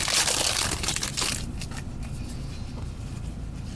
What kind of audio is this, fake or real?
real